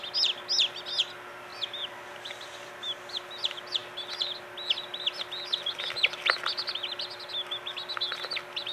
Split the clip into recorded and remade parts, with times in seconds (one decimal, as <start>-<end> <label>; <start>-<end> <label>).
0.0-8.7 recorded

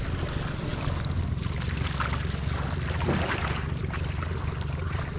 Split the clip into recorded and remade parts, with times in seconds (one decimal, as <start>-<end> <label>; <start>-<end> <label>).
0.0-5.2 recorded

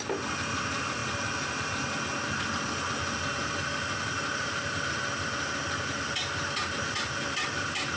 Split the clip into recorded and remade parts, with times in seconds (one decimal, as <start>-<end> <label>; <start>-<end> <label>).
0.0-8.0 recorded

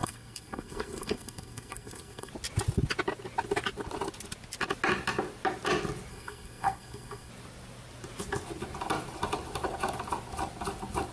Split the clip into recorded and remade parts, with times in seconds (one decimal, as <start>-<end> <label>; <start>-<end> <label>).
0.0-2.3 remade; 2.3-6.1 recorded; 6.1-7.3 remade; 7.3-11.1 recorded